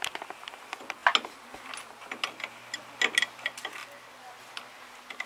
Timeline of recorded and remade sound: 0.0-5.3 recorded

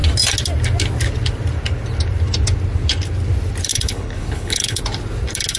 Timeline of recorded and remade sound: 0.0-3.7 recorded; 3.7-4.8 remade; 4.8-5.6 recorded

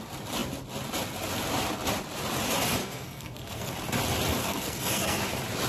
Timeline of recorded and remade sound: 0.0-2.8 recorded; 2.8-3.7 remade; 3.7-4.4 recorded; 4.4-5.2 remade; 5.2-5.7 recorded

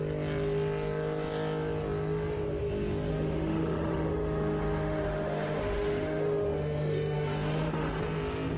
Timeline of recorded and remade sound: 0.0-3.1 recorded; 3.1-8.0 remade; 8.0-8.6 recorded

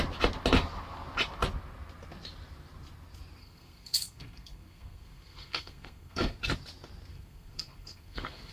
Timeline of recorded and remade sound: 0.0-3.4 recorded; 3.4-6.4 remade; 6.4-7.1 recorded; 7.1-8.5 remade

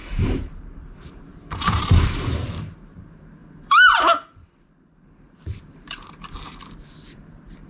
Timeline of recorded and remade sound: 0.0-7.7 remade